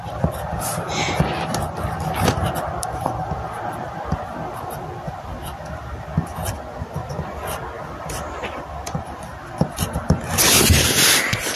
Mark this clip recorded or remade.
remade